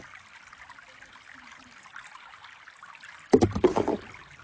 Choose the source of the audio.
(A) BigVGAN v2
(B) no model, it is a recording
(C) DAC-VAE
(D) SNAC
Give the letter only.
B